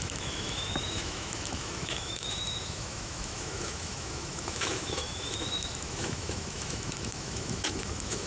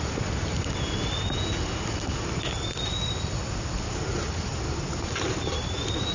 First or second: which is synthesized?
first